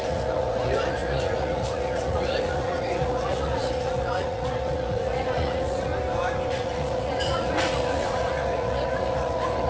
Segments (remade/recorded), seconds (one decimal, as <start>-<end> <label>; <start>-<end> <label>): 0.0-5.9 remade; 5.9-6.5 recorded; 6.5-9.7 remade